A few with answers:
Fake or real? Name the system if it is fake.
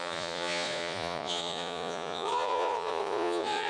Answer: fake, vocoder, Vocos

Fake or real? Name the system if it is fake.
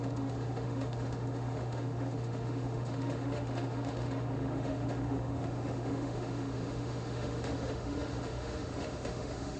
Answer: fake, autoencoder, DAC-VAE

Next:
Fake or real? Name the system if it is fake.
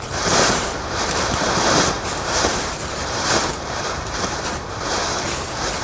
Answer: fake, vocoder, BigVGAN v2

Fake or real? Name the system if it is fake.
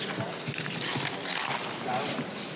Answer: real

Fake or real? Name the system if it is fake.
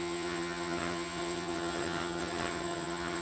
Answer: fake, vocoder, HiFi-GAN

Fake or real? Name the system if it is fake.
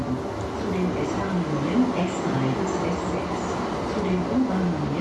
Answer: real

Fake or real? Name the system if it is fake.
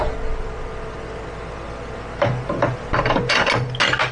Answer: real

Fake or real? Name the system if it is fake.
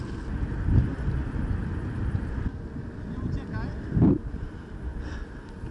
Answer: real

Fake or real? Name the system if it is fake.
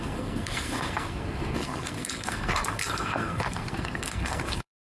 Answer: fake, codec, SNAC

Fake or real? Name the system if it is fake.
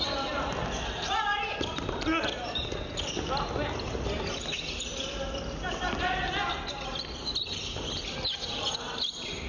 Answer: real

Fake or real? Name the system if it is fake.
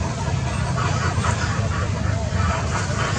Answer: real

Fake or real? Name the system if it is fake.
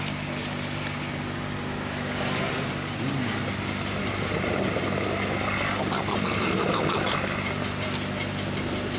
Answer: real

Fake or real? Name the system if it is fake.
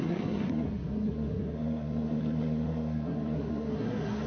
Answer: fake, codec, SNAC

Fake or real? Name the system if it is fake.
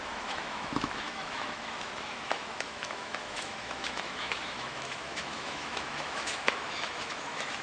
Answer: fake, autoencoder, DAC-VAE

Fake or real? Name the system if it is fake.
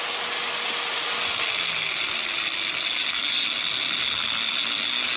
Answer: real